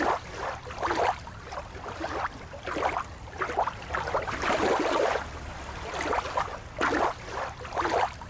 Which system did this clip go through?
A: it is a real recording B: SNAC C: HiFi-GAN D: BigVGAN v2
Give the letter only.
D